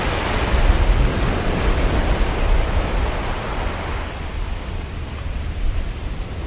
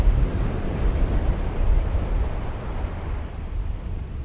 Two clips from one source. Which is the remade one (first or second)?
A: second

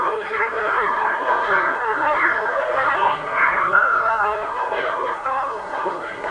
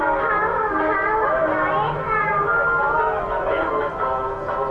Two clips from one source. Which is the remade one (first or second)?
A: first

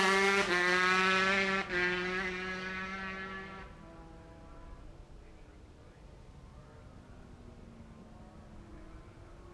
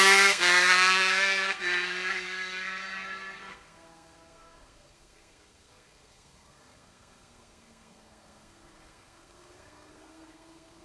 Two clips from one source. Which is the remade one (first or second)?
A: second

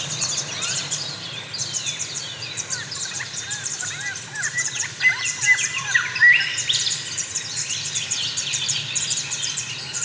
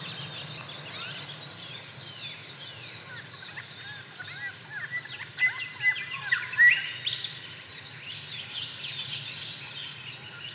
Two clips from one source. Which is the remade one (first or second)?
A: first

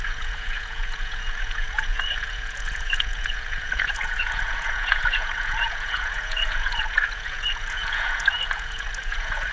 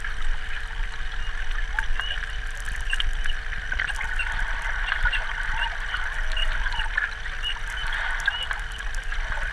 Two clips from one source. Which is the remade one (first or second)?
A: first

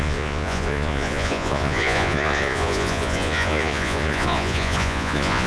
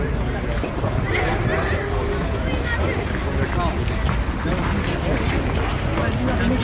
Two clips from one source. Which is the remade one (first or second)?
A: first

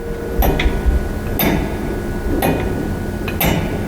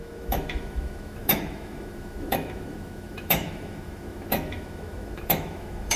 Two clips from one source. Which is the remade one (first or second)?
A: second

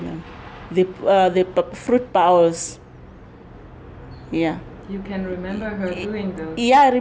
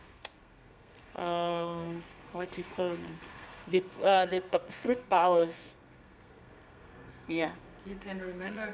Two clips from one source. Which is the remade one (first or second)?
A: second